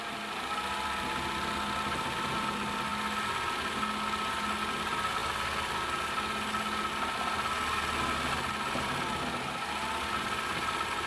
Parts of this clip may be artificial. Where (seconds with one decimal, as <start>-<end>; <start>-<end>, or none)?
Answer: none